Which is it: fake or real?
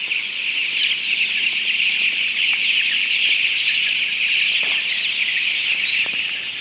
real